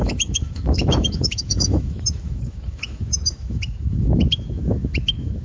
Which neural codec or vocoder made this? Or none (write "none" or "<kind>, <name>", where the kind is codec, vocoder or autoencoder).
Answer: autoencoder, DAC-VAE